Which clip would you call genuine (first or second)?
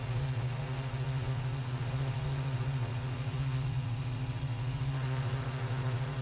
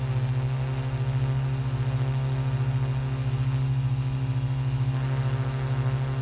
second